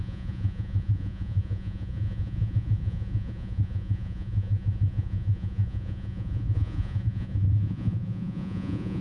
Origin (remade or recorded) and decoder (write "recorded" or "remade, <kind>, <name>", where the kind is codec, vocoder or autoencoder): remade, vocoder, Vocos